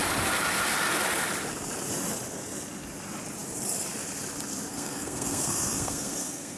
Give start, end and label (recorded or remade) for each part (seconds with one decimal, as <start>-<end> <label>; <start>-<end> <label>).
0.0-4.7 recorded; 4.7-6.6 remade